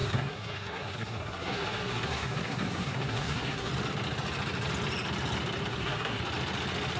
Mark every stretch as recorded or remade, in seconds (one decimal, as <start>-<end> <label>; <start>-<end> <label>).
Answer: 0.0-3.7 remade; 3.7-5.7 recorded; 5.7-6.2 remade; 6.2-7.0 recorded